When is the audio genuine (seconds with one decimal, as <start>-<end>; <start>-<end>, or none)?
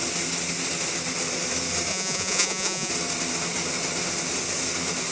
0.0-1.9; 2.9-5.1